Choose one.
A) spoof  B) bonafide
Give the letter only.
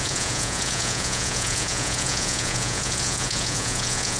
A